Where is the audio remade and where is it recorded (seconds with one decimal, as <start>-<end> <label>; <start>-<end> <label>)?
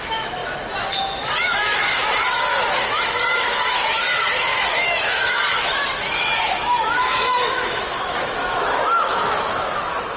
0.0-0.4 remade; 0.4-1.0 recorded; 1.0-10.2 remade